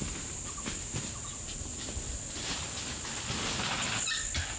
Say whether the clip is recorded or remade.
recorded